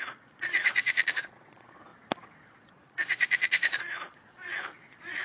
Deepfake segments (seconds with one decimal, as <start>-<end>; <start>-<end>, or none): 0.0-1.9; 2.5-5.2